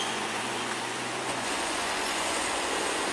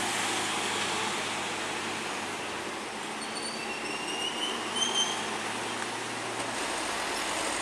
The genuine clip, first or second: second